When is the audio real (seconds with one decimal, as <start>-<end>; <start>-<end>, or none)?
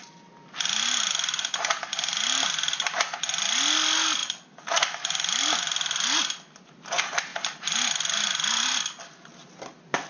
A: 0.0-4.2; 5.4-7.3; 8.7-10.1